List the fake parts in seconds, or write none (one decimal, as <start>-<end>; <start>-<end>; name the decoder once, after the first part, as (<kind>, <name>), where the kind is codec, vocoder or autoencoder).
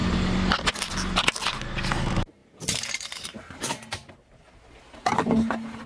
none